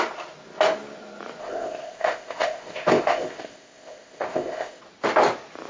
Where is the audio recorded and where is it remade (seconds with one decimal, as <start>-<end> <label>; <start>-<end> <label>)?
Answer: 0.0-1.4 recorded; 1.4-4.8 remade; 4.8-5.7 recorded